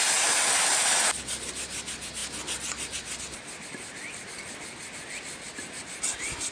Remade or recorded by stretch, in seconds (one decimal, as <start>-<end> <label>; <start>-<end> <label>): 0.0-6.5 recorded